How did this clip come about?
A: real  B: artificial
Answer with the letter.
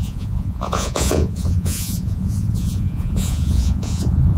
B